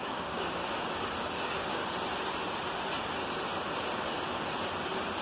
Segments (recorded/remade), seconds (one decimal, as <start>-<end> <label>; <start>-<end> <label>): 0.0-0.6 remade; 0.6-1.3 recorded; 1.3-1.8 remade; 1.8-5.2 recorded

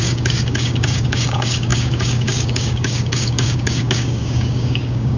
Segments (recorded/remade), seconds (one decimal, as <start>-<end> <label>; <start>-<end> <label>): 0.0-5.2 remade